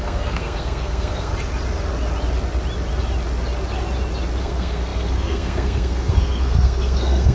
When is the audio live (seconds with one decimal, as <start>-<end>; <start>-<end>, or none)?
1.3-4.4